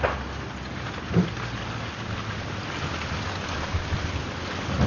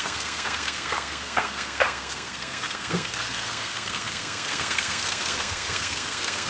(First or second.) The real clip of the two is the first